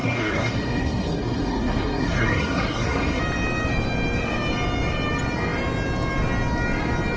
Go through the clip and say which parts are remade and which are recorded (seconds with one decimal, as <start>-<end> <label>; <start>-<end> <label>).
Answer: 0.0-3.2 remade; 3.2-7.2 recorded